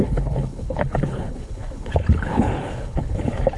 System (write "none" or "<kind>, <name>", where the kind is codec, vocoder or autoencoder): codec, HILCodec